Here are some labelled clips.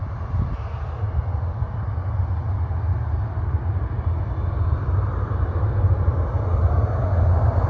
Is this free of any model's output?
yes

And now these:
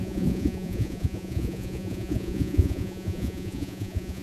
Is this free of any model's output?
no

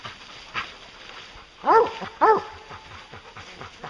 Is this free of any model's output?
yes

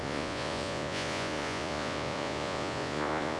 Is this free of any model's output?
no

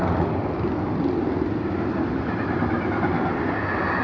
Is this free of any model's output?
yes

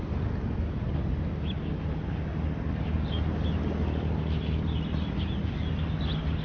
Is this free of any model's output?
yes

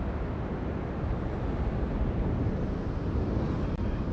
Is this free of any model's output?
yes